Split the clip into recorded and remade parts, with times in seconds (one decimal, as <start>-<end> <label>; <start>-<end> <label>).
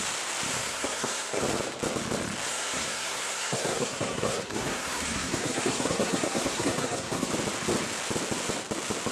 0.0-0.5 recorded; 0.5-1.4 remade; 1.4-2.5 recorded; 2.5-7.3 remade; 7.3-9.1 recorded